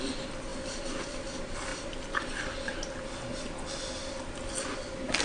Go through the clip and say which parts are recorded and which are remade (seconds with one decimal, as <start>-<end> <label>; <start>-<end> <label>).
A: 0.0-5.2 recorded